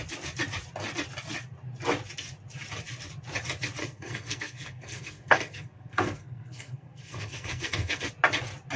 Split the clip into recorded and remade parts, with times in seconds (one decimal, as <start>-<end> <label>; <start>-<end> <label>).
0.0-3.8 recorded; 3.8-8.1 remade; 8.1-8.8 recorded